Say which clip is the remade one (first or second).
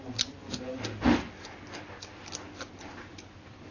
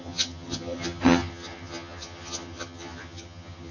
second